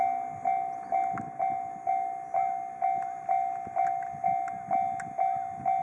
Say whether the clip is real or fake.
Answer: real